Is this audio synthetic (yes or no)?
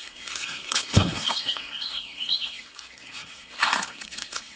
yes